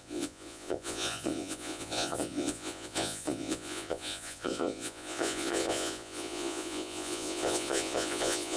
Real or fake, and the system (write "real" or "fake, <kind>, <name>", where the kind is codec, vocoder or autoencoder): fake, vocoder, Vocos